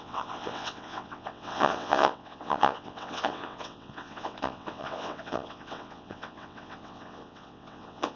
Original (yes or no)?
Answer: no